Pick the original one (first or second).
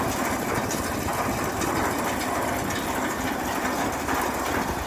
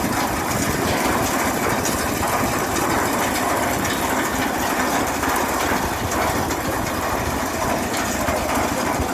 first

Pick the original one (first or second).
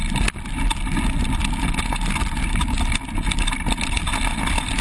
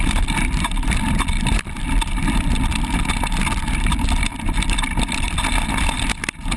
first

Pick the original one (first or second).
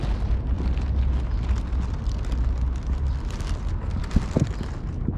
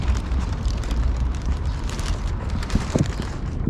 first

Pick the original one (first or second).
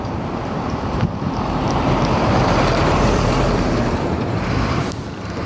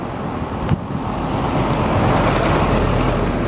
second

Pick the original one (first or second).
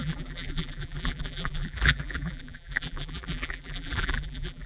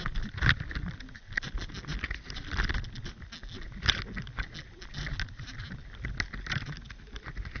second